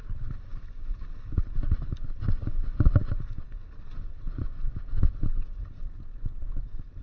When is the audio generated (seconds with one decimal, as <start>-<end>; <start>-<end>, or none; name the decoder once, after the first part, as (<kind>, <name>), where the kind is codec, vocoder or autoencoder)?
none